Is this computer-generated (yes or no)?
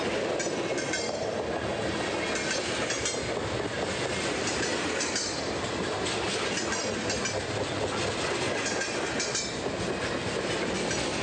no